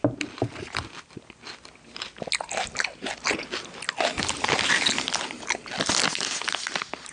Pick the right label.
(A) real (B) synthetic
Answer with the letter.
A